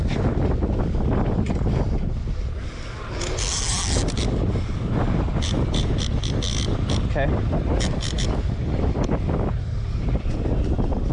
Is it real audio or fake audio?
real